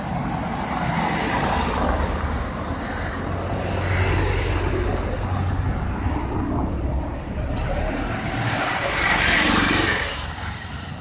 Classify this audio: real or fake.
real